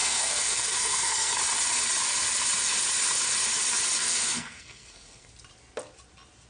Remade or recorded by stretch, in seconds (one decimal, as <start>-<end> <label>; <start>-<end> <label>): 0.0-1.4 remade; 1.4-4.0 recorded; 4.0-5.3 remade; 5.3-6.5 recorded